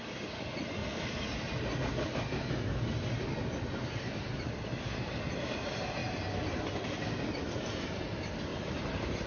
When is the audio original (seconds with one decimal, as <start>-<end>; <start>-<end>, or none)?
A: 0.8-4.0; 6.0-6.6; 8.5-9.3